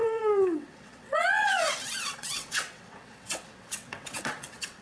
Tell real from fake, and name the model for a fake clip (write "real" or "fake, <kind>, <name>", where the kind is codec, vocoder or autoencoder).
fake, vocoder, WaveNeXt